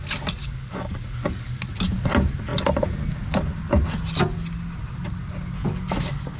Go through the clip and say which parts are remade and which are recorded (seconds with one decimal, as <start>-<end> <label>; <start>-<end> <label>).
0.0-0.4 recorded; 0.4-2.0 remade; 2.0-5.6 recorded; 5.6-6.4 remade